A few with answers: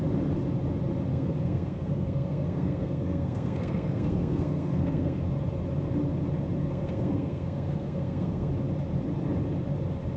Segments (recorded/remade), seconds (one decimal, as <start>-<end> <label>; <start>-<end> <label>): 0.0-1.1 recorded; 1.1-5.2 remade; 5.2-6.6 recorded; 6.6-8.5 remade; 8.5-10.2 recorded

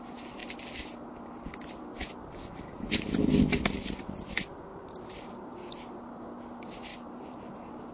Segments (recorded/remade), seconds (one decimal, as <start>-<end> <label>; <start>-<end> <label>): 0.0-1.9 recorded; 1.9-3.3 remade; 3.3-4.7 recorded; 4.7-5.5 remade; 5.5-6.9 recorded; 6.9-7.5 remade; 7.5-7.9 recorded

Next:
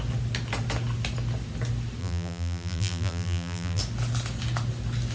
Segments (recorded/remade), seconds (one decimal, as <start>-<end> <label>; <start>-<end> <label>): 0.0-2.0 recorded; 2.0-3.8 remade; 3.8-5.1 recorded

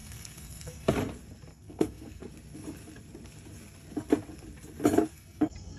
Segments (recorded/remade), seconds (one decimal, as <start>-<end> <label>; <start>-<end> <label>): 0.0-0.9 remade; 0.9-1.5 recorded; 1.5-2.3 remade; 2.3-5.1 recorded; 5.1-5.8 remade